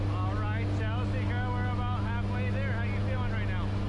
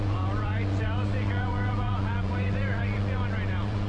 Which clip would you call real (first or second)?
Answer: first